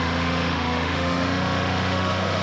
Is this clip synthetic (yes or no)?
yes